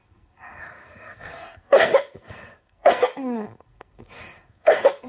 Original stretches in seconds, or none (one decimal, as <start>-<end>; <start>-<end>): none

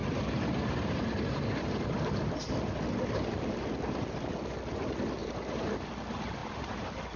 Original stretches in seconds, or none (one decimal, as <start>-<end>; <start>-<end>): 2.5-5.2; 5.9-6.4